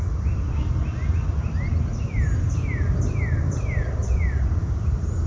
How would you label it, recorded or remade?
recorded